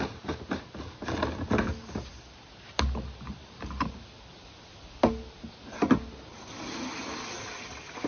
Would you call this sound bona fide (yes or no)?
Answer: yes